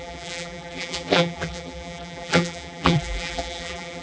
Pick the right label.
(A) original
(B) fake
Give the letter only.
B